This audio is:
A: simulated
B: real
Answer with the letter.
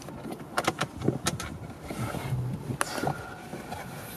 B